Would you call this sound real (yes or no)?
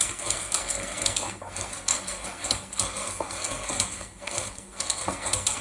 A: no